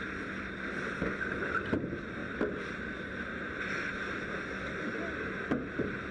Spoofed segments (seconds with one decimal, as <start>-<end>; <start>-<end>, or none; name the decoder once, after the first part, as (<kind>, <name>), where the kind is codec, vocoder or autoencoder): none